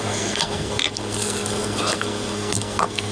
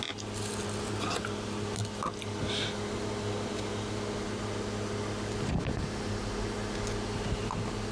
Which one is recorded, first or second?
second